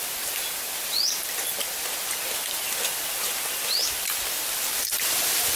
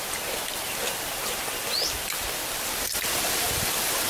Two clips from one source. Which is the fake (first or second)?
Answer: second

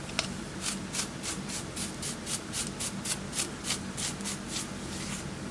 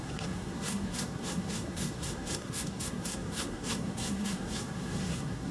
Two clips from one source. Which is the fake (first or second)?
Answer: second